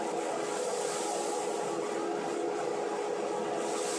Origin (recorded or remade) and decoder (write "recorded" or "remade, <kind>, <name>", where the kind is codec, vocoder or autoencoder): recorded